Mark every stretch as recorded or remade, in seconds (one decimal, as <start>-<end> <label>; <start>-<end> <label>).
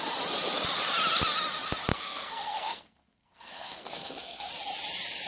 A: 0.0-1.9 recorded; 1.9-4.5 remade; 4.5-5.3 recorded